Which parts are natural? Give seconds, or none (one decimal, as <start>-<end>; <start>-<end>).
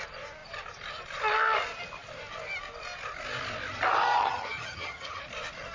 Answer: 0.0-4.2; 5.2-5.7